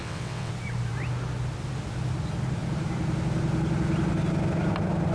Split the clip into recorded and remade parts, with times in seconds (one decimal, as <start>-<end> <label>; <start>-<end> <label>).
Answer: 0.0-0.5 remade; 0.5-5.1 recorded